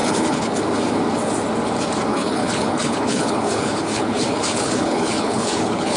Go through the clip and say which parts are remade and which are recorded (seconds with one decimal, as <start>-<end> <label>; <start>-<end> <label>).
0.0-0.6 remade; 0.6-2.1 recorded; 2.1-6.0 remade